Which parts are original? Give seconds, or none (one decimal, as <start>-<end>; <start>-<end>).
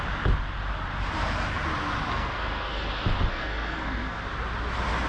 0.0-2.1; 2.9-3.3; 4.2-5.1